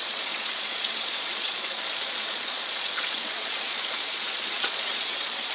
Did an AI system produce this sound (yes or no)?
yes